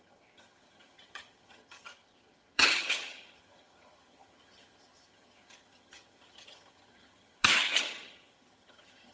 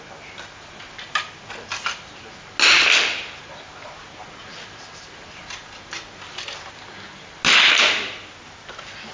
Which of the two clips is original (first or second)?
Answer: second